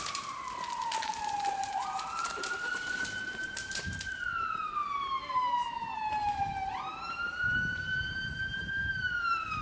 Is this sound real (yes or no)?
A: no